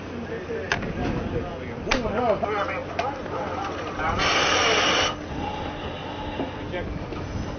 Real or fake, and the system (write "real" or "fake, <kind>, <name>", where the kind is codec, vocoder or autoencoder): real